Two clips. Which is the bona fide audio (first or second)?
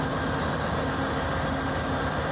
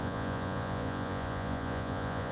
first